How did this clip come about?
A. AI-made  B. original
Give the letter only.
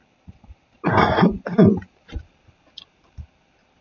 B